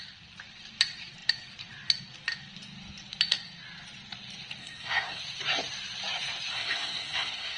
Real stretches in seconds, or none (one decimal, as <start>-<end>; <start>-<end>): 0.0-4.6; 5.2-6.5